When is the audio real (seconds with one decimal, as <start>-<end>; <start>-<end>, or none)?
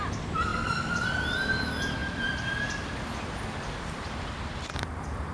0.0-0.5; 1.2-2.0